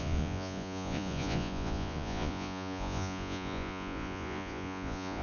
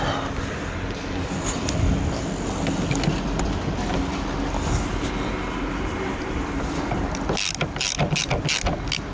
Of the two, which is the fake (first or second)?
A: first